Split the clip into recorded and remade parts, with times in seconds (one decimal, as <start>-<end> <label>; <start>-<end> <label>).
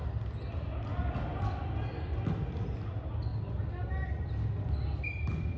0.0-5.6 recorded